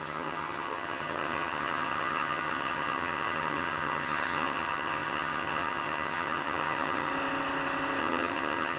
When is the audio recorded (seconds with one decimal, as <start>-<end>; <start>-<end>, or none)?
7.1-8.0